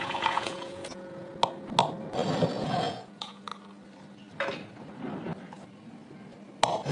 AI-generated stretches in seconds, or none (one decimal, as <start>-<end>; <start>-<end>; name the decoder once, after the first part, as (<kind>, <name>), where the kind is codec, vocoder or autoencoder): 0.0-1.3 (vocoder, Vocos); 2.5-3.5